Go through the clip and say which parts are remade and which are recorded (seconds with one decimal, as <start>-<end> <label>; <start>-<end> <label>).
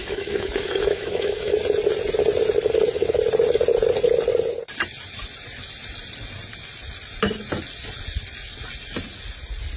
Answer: 0.0-1.6 remade; 1.6-9.8 recorded